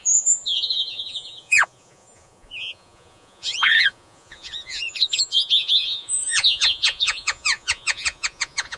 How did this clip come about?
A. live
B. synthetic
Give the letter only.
B